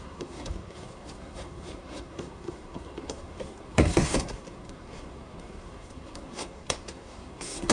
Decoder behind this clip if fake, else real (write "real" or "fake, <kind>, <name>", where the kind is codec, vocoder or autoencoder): fake, codec, SNAC